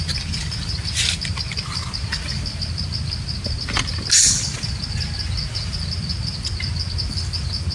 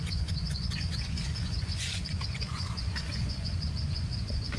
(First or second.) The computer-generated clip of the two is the second